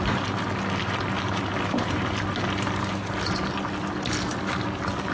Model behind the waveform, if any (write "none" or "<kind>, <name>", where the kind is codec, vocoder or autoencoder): none